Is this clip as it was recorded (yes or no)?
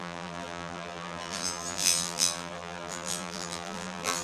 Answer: no